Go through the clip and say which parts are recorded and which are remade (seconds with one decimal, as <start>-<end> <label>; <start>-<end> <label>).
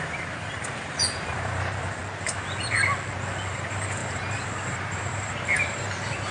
0.0-2.0 remade; 2.0-3.5 recorded; 3.5-6.3 remade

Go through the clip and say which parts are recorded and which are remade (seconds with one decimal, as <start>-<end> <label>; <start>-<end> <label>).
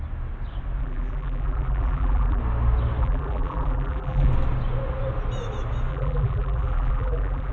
0.0-0.8 recorded; 0.8-2.4 remade; 2.4-3.0 recorded; 3.0-4.3 remade; 4.3-5.9 recorded; 5.9-7.5 remade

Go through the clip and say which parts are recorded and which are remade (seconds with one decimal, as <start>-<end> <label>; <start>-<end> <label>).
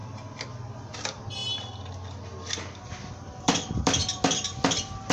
0.0-0.9 recorded; 0.9-1.4 remade; 1.4-3.1 recorded; 3.1-4.0 remade; 4.0-5.1 recorded